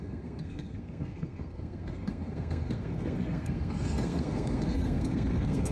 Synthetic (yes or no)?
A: yes